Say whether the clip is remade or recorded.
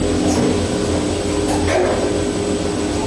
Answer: recorded